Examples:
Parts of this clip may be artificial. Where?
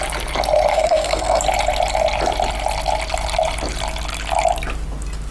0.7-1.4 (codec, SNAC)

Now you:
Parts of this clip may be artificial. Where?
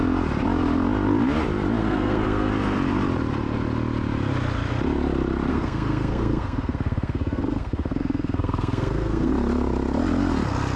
1.8-2.5 (codec, SNAC); 5.5-9.3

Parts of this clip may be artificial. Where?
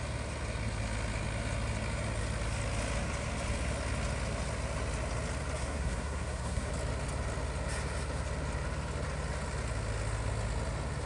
5.6-6.7 (codec, SNAC)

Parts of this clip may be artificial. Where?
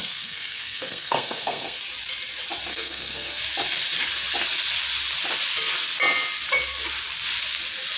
0.0-1.8 (codec, SNAC); 2.7-3.4